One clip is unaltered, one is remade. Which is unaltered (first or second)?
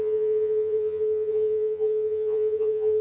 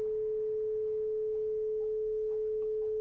second